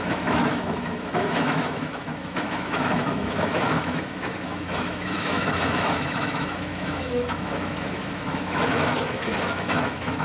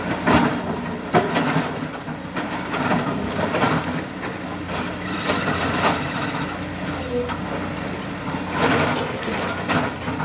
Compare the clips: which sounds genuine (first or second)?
second